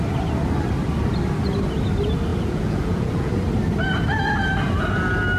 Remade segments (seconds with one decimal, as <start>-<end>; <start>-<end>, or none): 2.3-3.3